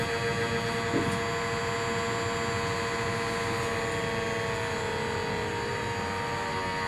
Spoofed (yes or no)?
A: no